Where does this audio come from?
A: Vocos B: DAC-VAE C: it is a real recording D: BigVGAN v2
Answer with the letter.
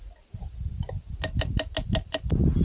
C